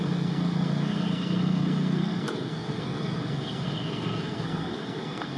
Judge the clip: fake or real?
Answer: fake